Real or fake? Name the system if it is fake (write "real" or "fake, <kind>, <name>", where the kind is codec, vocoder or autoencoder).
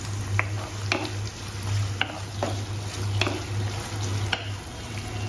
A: real